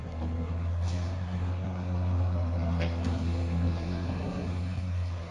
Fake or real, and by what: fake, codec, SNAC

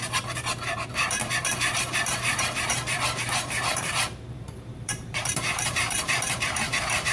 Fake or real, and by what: fake, vocoder, BigVGAN v2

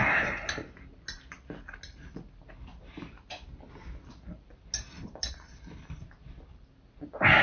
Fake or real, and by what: real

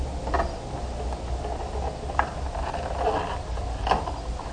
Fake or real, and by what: real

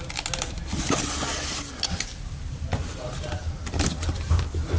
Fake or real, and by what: real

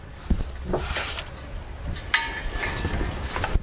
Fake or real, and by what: real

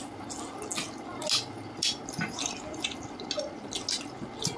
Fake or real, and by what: real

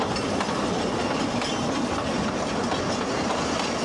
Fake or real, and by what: real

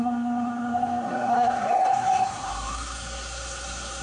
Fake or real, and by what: fake, codec, SNAC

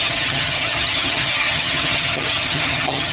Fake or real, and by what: fake, vocoder, HiFi-GAN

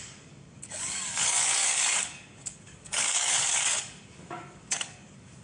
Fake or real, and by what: fake, codec, DAC